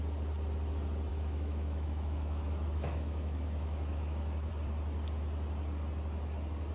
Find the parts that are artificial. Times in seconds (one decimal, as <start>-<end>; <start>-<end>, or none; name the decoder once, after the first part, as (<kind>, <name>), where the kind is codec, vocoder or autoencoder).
1.1-4.5 (autoencoder, DAC-VAE)